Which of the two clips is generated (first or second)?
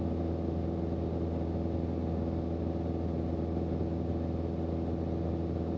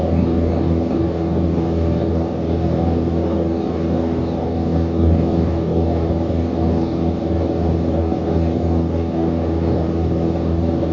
second